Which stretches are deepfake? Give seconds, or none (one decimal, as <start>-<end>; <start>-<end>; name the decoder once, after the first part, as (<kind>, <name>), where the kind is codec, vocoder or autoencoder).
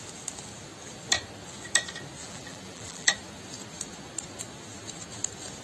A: 2.2-3.1 (vocoder, BigVGAN v2)